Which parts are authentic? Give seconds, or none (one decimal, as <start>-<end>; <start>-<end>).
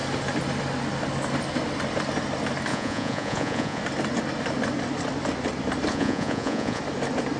0.0-2.7; 3.8-5.9; 6.8-7.4